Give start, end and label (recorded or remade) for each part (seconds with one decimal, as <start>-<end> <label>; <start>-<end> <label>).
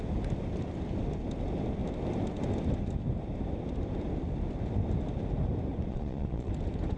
0.0-5.9 recorded; 5.9-6.5 remade; 6.5-7.0 recorded